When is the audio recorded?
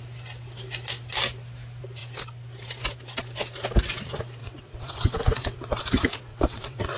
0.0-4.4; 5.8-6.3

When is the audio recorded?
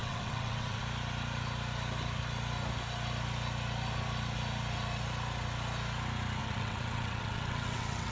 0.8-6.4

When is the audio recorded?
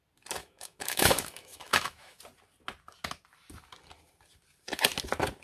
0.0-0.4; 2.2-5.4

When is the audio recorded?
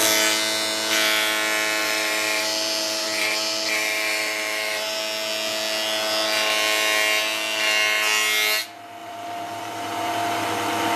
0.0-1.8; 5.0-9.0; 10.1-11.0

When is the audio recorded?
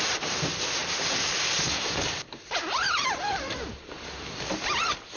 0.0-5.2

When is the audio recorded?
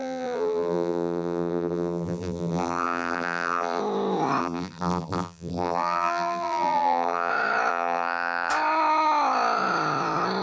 3.8-4.4; 7.3-7.7; 8.5-10.4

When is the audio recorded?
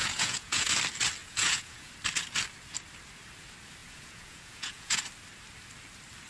0.7-1.2; 1.9-3.8; 5.0-6.3